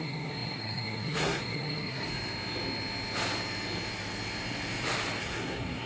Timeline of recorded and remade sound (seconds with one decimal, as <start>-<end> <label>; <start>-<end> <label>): 0.0-2.1 remade; 2.1-5.2 recorded; 5.2-5.9 remade